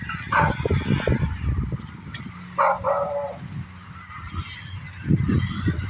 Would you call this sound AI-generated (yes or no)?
no